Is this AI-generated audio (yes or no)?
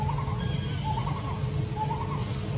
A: no